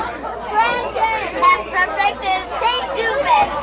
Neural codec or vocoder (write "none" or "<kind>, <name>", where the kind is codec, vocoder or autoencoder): none